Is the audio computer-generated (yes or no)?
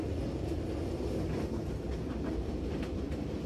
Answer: no